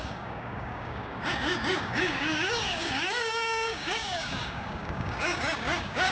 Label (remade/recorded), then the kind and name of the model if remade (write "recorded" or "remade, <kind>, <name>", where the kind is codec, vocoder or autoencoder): remade, codec, DAC